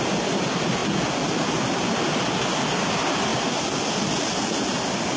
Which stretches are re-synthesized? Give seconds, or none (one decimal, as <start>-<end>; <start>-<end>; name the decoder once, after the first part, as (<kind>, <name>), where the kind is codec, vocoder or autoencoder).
none